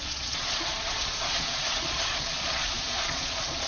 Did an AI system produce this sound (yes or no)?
yes